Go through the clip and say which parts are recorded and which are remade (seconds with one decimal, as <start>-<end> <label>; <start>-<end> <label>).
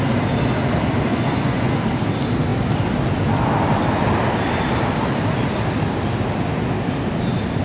0.0-1.1 recorded; 1.1-1.7 remade; 1.7-7.6 recorded